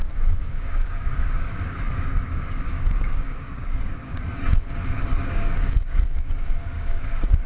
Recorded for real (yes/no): no